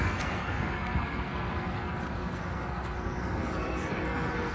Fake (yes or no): yes